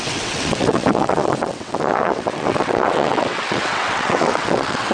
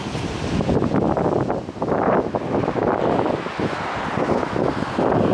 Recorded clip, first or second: second